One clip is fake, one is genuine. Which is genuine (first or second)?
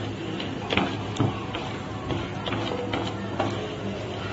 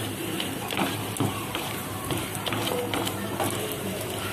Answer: first